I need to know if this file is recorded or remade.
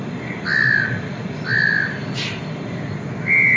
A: recorded